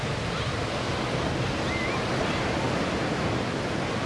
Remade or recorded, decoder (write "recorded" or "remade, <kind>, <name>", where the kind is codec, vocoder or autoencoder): recorded